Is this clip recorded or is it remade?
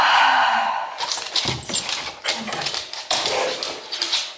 recorded